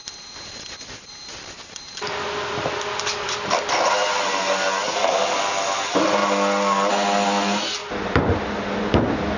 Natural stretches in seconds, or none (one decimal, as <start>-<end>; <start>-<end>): 0.0-9.4